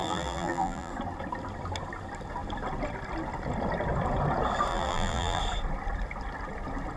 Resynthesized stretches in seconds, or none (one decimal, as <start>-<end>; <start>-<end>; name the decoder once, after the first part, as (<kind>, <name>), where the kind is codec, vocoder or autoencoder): 0.0-0.9 (vocoder, BigVGAN v2); 4.7-5.4